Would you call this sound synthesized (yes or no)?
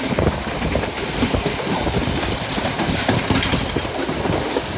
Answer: no